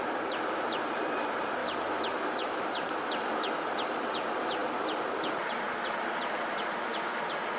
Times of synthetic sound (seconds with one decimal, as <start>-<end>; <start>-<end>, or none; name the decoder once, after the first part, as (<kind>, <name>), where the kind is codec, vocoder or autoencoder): none